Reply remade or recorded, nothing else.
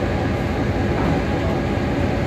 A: recorded